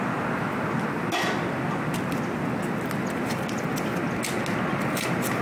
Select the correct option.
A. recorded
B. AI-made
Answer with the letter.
A